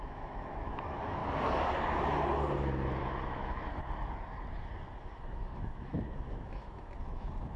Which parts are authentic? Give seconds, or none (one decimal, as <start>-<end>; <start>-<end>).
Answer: 1.2-3.0; 3.7-5.0